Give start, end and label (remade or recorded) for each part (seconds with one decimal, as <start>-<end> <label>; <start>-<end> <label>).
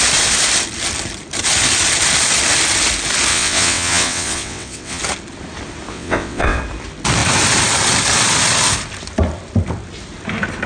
0.0-3.3 recorded; 3.3-5.0 remade; 5.0-5.9 recorded; 5.9-6.6 remade; 6.6-10.7 recorded